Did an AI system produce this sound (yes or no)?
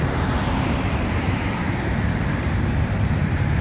yes